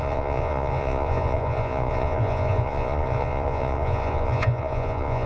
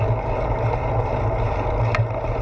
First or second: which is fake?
first